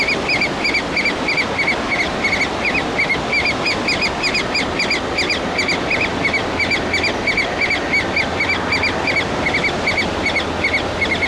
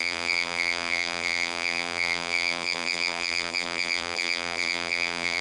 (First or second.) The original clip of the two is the first